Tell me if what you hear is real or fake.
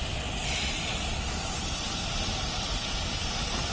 real